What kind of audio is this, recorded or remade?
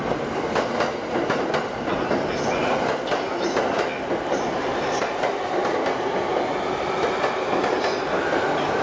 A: recorded